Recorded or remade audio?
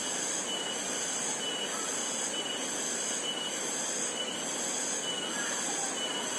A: recorded